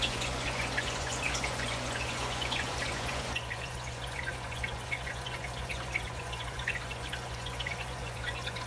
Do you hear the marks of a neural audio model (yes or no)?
yes